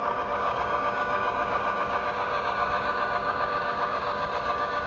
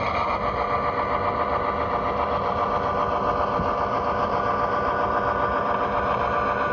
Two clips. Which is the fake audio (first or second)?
first